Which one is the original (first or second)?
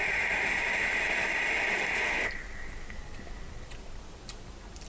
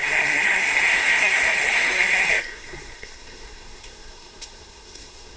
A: first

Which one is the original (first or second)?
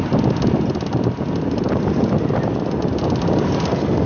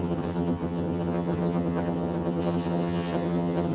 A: first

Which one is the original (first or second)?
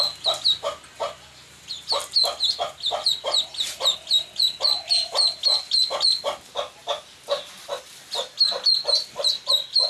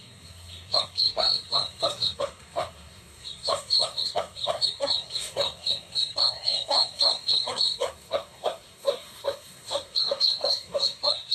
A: first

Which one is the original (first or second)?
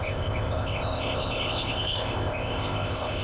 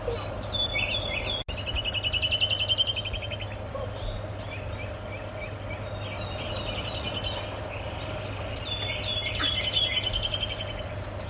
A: second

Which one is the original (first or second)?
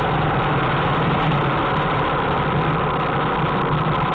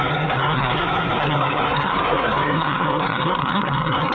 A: first